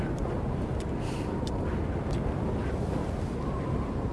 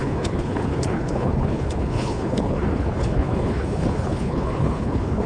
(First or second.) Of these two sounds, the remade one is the second